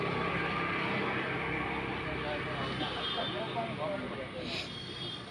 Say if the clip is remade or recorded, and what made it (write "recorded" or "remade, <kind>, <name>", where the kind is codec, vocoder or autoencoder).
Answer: recorded